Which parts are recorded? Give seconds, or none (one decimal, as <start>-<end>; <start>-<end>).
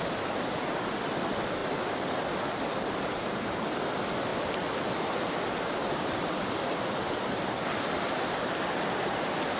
0.0-9.6